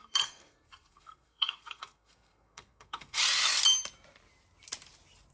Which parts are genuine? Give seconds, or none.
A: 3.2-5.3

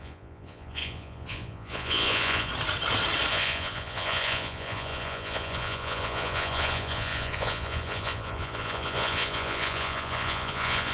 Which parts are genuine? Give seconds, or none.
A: 2.5-3.3

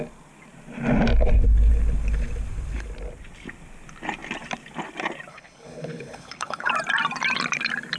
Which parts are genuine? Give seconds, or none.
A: 0.0-5.3; 6.7-8.0

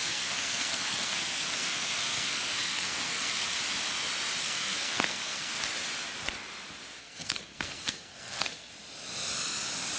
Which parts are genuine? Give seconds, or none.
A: 3.6-4.4; 5.6-7.0; 8.7-10.0

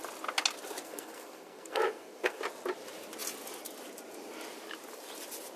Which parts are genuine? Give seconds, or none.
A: 0.0-0.8; 2.4-5.6

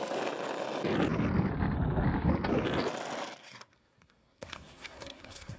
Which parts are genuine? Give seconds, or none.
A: 0.0-3.4

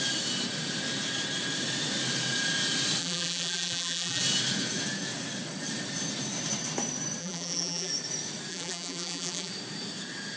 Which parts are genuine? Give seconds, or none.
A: 0.0-3.0; 4.2-7.2; 7.9-8.5; 9.5-10.4